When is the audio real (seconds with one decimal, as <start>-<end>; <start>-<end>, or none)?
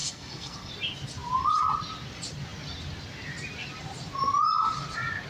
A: 0.7-5.3